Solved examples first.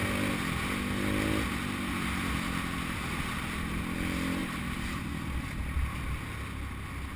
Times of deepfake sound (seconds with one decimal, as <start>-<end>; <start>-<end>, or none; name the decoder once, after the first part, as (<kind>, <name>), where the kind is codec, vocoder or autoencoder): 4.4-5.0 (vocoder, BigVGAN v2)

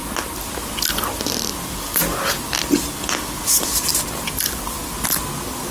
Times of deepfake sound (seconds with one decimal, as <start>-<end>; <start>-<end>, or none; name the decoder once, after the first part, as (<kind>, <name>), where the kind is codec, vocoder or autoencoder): none

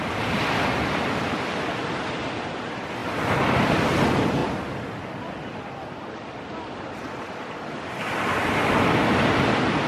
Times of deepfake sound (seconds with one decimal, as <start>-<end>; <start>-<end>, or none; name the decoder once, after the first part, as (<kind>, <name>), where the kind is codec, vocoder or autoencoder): 3.0-3.5 (vocoder, BigVGAN v2)

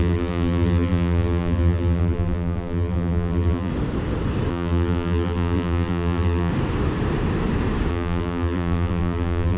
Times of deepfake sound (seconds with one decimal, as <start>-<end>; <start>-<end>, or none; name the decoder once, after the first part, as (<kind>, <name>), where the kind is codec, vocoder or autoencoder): 0.0-3.7 (vocoder, BigVGAN v2); 4.5-6.5; 7.9-9.6